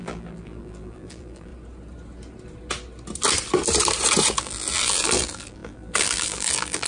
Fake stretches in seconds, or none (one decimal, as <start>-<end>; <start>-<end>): 0.0-1.5; 4.4-6.9